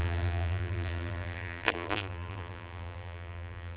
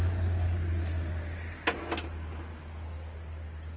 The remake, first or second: first